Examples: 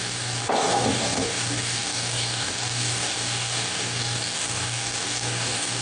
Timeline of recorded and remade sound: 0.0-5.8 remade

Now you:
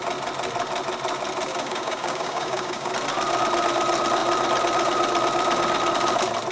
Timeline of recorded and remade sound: 0.0-1.5 recorded; 1.5-2.9 remade; 2.9-6.5 recorded